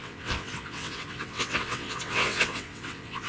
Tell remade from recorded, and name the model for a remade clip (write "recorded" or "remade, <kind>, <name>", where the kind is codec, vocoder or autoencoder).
remade, vocoder, WaveNeXt